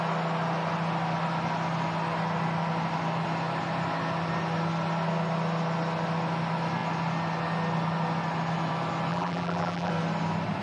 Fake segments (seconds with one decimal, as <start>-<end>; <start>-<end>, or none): 9.1-9.9